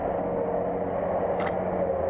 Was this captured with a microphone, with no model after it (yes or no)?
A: yes